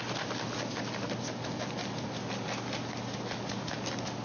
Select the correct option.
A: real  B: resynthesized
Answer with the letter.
A